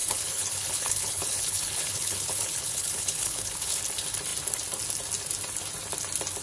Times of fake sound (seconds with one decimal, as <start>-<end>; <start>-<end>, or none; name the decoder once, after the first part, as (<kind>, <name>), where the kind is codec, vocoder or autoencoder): 0.0-3.8 (codec, HILCodec)